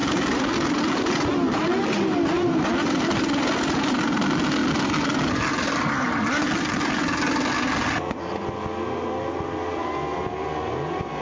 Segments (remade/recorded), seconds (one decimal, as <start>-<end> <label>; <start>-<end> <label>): 0.0-11.2 recorded